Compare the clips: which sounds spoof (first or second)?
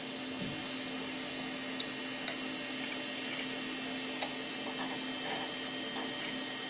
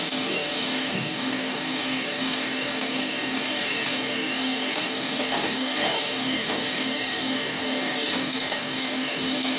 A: second